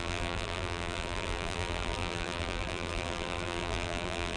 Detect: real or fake fake